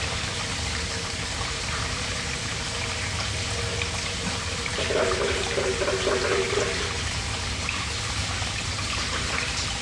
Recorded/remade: recorded